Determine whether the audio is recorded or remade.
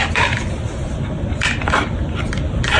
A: remade